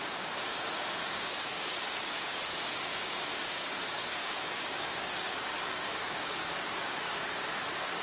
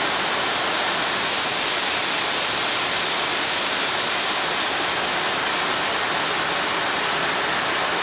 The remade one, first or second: first